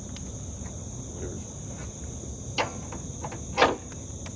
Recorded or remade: recorded